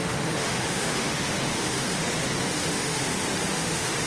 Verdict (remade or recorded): remade